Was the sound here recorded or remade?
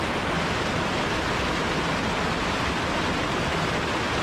recorded